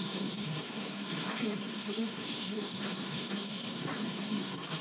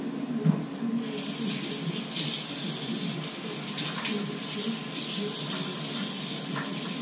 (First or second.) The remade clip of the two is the first